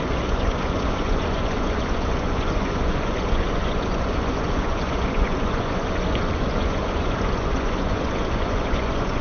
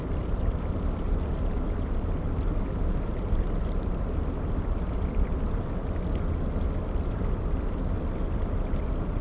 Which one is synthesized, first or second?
first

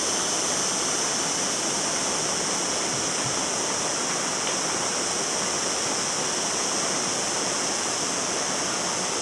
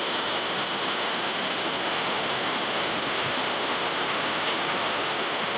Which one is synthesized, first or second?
second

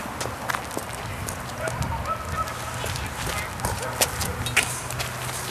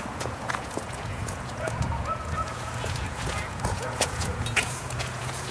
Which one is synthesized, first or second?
second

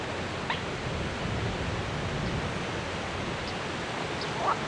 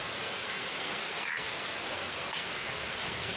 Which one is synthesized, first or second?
second